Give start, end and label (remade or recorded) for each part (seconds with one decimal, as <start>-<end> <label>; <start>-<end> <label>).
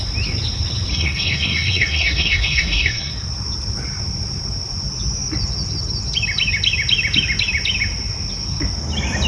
0.0-0.9 recorded; 0.9-3.1 remade; 3.1-9.3 recorded